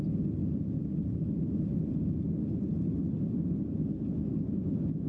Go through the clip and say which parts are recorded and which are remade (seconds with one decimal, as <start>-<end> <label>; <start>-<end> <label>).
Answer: 0.0-4.2 recorded; 4.2-5.1 remade